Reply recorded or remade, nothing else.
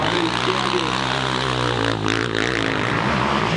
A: recorded